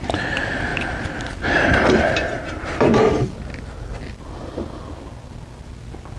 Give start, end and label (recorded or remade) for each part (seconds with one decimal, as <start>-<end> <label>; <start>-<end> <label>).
0.0-0.7 remade; 0.7-1.7 recorded; 1.7-2.9 remade; 2.9-6.2 recorded